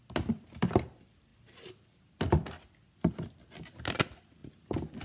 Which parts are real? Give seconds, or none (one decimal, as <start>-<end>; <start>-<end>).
0.0-5.0